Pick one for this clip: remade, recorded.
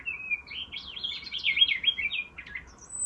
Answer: recorded